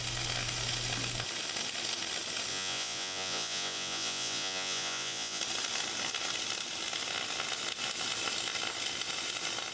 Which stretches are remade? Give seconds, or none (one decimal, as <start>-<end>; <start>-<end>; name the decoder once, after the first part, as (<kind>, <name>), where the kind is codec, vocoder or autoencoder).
2.5-5.4 (vocoder, Vocos)